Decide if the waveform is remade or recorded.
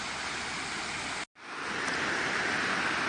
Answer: recorded